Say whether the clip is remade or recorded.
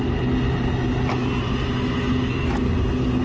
recorded